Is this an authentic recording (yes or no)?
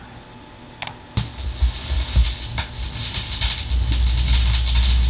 yes